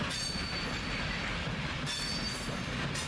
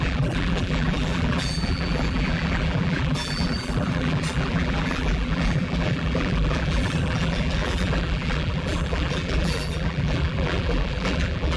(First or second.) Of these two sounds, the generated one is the second